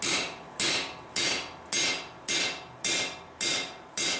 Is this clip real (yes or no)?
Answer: yes